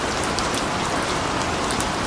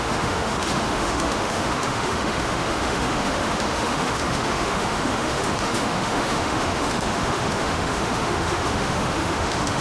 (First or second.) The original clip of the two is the first